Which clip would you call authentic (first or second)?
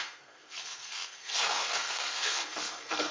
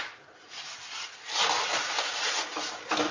second